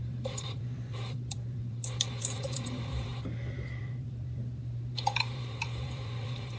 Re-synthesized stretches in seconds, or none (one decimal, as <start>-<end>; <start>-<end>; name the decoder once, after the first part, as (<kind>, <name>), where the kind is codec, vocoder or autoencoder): 0.0-6.6 (vocoder, BigVGAN v2)

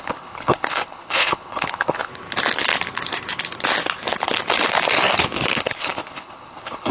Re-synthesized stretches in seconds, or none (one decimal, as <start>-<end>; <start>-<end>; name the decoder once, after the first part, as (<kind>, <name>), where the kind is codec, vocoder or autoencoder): 0.0-2.1 (codec, HILCodec); 5.6-6.9

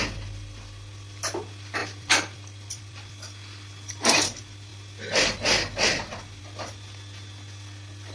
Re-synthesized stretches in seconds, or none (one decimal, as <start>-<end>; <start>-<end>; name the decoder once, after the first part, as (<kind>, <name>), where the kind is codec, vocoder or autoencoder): 1.8-3.1 (vocoder, BigVGAN v2)

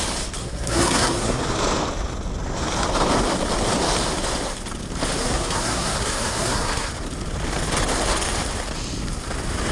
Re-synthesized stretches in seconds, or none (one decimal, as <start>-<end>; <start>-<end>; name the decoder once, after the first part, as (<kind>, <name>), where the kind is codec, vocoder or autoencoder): 0.4-1.4 (codec, SNAC); 5.2-6.9

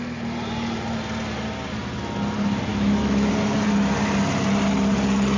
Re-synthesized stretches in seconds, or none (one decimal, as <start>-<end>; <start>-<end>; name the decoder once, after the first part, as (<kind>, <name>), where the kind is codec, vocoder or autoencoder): 2.7-3.3 (autoencoder, DAC-VAE)

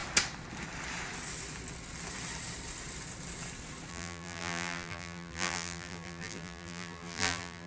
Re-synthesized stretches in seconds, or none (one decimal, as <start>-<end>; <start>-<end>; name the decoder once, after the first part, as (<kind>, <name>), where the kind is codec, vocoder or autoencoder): 3.9-7.7 (vocoder, BigVGAN v2)